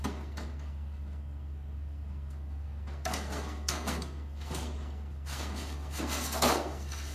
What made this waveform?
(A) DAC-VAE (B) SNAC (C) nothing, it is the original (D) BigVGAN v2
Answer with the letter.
B